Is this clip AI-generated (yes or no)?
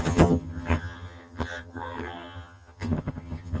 yes